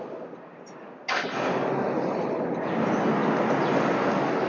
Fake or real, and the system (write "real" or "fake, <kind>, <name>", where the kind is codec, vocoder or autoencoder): real